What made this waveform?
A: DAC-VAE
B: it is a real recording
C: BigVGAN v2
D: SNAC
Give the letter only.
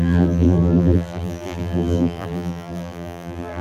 C